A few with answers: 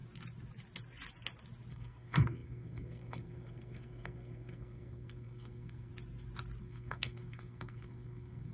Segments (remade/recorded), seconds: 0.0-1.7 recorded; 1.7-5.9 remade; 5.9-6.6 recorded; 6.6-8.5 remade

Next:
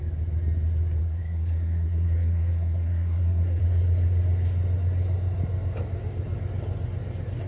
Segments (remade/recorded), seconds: 0.0-1.0 recorded; 1.0-3.6 remade; 3.6-7.5 recorded

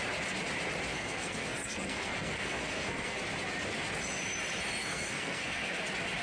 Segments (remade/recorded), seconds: 0.0-0.9 recorded; 0.9-3.2 remade; 3.2-4.8 recorded; 4.8-5.8 remade; 5.8-6.2 recorded

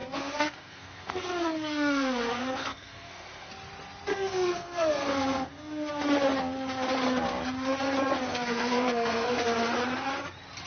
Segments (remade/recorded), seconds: 0.0-3.5 remade; 3.5-4.1 recorded; 4.1-5.9 remade; 5.9-8.2 recorded; 8.2-9.4 remade; 9.4-10.7 recorded